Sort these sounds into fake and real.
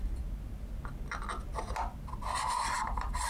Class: real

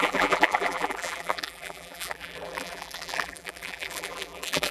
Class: fake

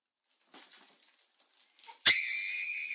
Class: fake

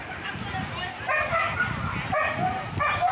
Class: real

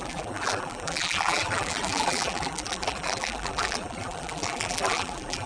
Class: fake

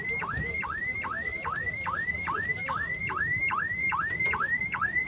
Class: fake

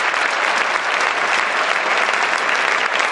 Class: real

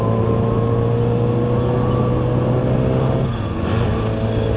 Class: real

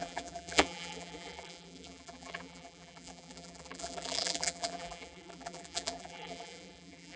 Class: fake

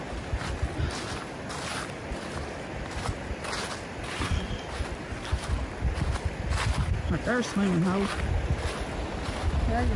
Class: real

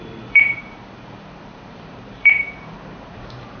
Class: fake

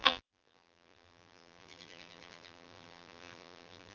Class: fake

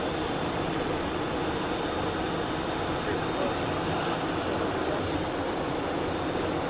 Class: real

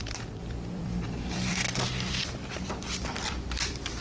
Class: fake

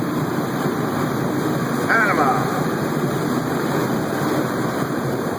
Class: fake